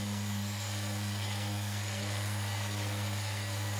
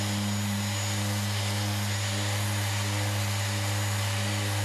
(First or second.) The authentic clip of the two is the second